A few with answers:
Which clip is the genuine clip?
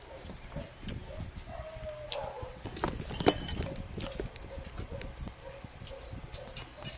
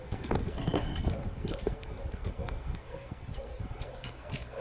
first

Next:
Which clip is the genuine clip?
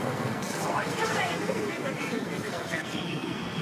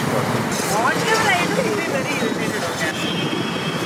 second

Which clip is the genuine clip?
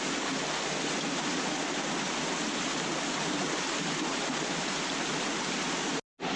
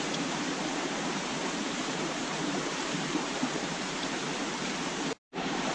first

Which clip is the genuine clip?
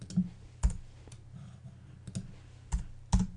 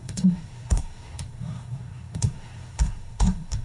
first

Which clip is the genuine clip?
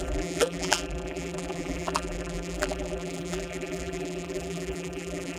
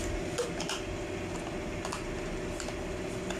second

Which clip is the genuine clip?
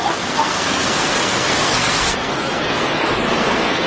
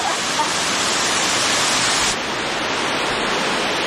second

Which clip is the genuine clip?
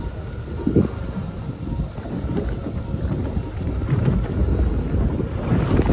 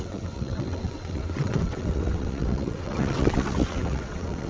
first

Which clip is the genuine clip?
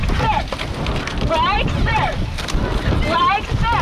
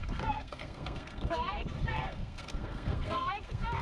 first